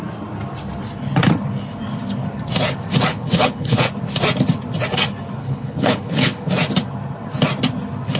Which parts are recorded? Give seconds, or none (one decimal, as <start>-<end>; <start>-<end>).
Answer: 0.0-3.1; 3.9-5.4; 6.5-8.2